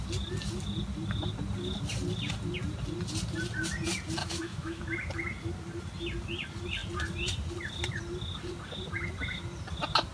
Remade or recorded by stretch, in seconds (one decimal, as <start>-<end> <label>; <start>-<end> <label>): 0.0-4.2 recorded; 4.2-4.8 remade; 4.8-10.1 recorded